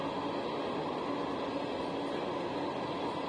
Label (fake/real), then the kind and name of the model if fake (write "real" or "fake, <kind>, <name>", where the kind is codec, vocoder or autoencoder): real